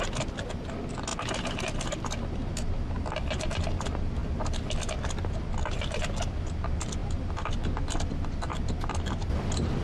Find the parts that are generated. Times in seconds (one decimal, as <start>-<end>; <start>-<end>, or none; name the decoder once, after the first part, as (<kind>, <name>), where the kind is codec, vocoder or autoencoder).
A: none